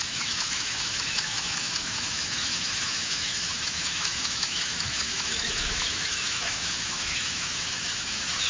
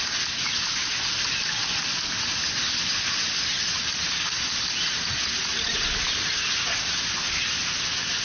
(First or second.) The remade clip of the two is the first